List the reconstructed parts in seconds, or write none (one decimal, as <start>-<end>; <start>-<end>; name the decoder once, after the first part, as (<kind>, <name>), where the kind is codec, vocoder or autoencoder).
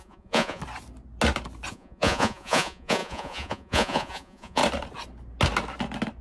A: 0.0-0.6 (vocoder, Vocos); 1.7-4.6